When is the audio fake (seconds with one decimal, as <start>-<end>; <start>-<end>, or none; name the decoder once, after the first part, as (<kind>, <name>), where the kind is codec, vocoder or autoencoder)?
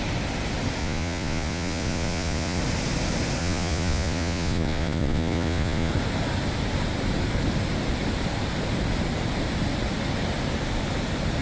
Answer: 0.8-2.6 (vocoder, Vocos); 3.4-5.9